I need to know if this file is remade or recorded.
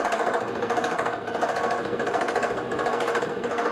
remade